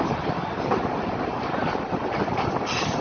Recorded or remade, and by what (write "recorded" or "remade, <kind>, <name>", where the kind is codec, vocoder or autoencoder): remade, vocoder, BigVGAN v2